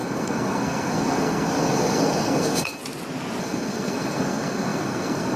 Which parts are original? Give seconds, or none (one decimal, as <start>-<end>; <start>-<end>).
2.8-3.4